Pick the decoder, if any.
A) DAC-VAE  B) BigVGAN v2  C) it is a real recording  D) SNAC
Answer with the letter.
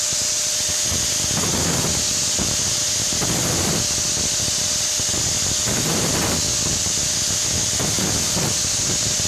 C